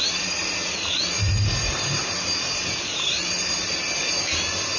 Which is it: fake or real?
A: real